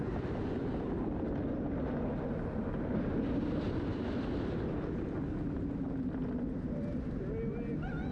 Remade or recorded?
recorded